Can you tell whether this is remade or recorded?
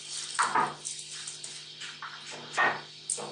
recorded